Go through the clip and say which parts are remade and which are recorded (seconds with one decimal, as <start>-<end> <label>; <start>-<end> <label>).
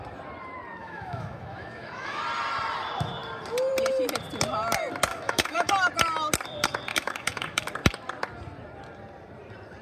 0.0-0.8 recorded; 0.8-2.2 remade; 2.2-5.1 recorded; 5.1-5.7 remade; 5.7-6.9 recorded; 6.9-7.7 remade; 7.7-9.8 recorded